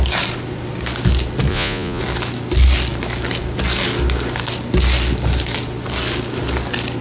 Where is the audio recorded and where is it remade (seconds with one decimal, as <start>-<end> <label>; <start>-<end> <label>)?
0.0-1.5 recorded; 1.5-2.0 remade; 2.0-7.0 recorded